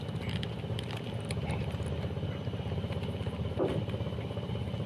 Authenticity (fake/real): real